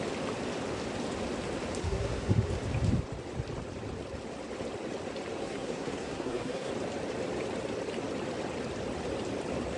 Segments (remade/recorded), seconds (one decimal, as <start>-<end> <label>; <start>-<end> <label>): 0.0-1.8 recorded; 1.8-2.5 remade; 2.5-5.4 recorded; 5.4-6.7 remade; 6.7-9.8 recorded

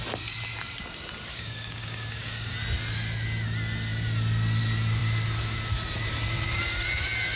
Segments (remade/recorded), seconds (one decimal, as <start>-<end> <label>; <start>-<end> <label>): 0.0-1.3 recorded; 1.3-2.5 remade; 2.5-7.4 recorded

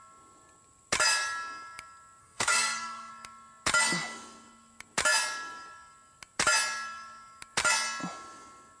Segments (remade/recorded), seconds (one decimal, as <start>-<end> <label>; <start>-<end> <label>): 0.0-2.2 recorded; 2.2-3.1 remade; 3.1-8.8 recorded

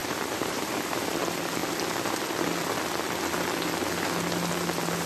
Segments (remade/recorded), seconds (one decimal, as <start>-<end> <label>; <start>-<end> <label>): 0.0-1.0 remade; 1.0-5.1 recorded

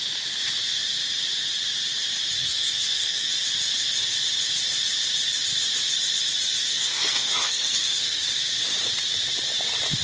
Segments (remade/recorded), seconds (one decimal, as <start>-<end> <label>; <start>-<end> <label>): 0.0-2.4 recorded; 2.4-3.3 remade; 3.3-6.7 recorded; 6.7-8.2 remade; 8.2-10.0 recorded